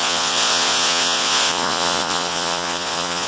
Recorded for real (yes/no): no